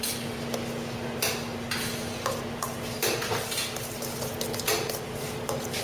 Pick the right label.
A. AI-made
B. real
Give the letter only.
B